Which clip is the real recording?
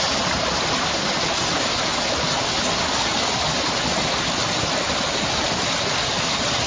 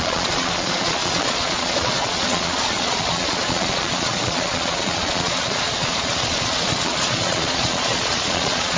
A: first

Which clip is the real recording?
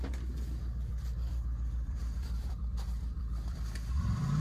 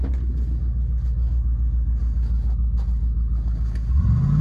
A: second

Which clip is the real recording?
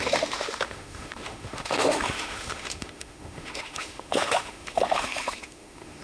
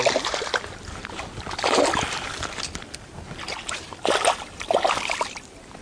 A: second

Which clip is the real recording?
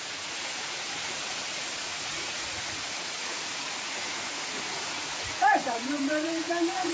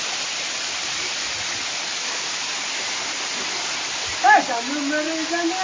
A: second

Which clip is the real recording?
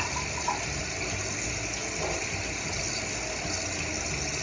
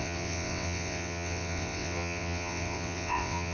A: first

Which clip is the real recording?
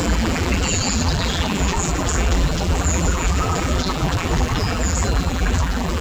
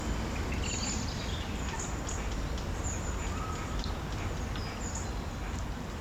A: second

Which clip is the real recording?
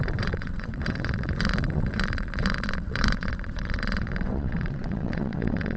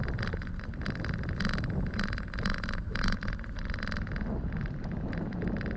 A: second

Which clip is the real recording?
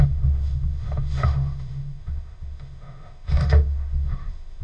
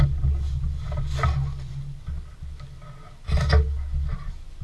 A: second